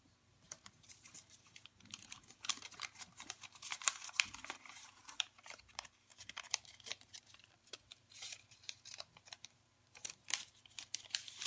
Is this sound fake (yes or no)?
yes